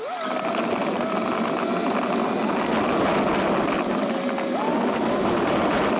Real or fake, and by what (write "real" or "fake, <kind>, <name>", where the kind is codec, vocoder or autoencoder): real